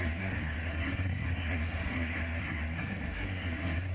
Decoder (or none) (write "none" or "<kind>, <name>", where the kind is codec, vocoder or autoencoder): codec, SNAC